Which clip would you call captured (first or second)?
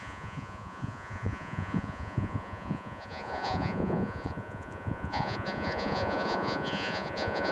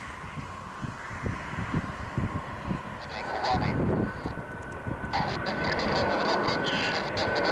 second